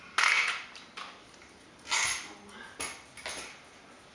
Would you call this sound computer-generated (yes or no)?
no